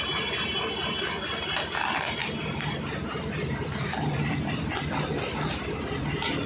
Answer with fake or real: real